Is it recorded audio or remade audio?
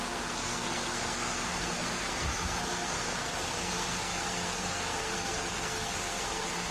remade